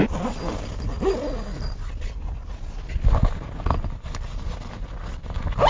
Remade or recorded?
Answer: recorded